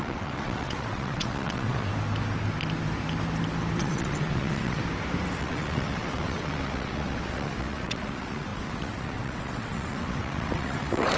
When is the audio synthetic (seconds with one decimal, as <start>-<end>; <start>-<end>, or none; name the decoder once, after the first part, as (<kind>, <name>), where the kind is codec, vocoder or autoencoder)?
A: 0.0-1.9 (vocoder, WaveNeXt); 3.8-4.8; 5.4-11.2